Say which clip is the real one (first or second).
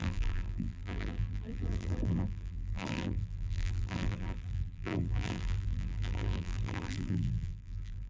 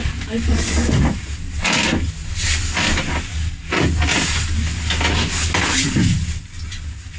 second